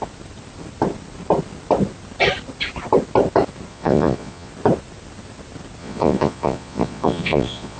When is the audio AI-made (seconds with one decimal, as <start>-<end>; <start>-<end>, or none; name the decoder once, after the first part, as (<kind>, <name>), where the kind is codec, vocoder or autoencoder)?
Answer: 3.7-4.5 (vocoder, Vocos); 5.8-7.8

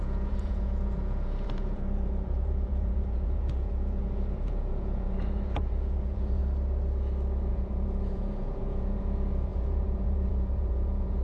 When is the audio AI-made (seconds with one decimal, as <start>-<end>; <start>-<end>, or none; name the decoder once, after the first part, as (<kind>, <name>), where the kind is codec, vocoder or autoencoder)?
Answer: 0.0-6.4 (vocoder, Vocos); 7.5-11.2

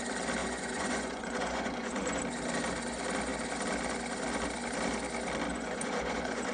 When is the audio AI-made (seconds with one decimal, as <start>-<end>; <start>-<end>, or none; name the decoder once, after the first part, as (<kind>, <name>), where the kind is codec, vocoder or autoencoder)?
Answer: 0.4-2.2 (vocoder, Vocos); 5.5-6.5

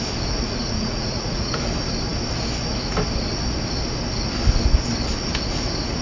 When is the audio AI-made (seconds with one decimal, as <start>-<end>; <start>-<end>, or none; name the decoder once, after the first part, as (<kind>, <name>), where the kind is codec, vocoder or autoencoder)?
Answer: 0.6-1.5 (vocoder, Vocos)

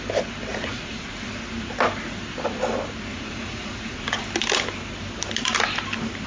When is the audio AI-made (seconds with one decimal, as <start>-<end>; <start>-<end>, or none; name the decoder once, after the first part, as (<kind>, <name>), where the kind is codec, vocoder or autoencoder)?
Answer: 0.5-1.3 (vocoder, Vocos); 3.1-4.2

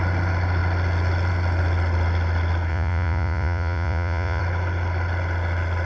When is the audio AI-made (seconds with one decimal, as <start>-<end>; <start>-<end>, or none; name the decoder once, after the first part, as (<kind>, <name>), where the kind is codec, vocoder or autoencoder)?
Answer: 2.7-4.4 (vocoder, Vocos)

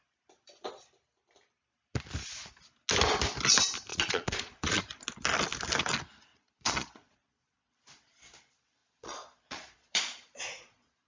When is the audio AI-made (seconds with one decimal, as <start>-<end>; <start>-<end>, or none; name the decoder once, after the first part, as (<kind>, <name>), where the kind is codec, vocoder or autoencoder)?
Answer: 3.9-4.8 (vocoder, Vocos); 6.3-7.7; 8.8-11.1